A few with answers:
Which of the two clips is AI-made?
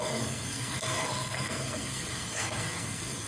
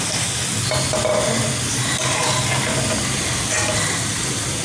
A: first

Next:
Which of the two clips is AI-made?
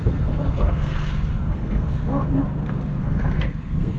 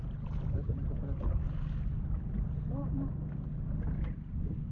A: first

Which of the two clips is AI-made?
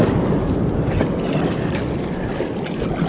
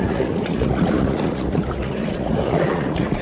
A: second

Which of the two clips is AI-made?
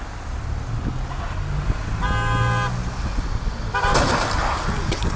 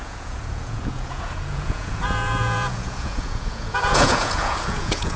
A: second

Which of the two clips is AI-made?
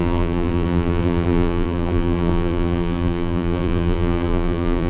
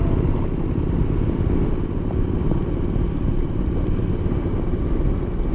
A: first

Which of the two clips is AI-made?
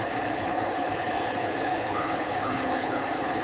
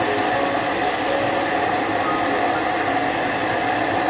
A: first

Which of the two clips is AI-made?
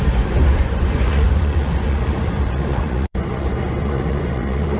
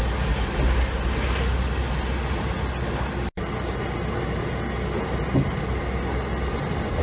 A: first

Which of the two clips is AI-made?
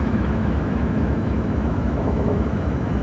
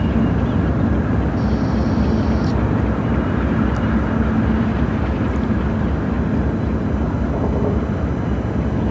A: first